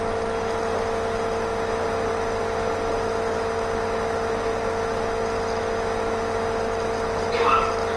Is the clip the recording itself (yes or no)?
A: yes